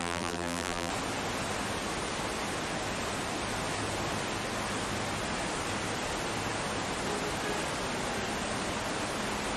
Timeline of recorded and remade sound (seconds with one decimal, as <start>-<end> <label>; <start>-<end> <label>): 0.0-0.9 remade; 0.9-9.6 recorded